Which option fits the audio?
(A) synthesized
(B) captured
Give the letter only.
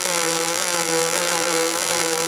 A